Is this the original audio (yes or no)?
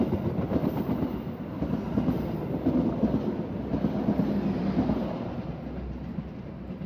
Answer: yes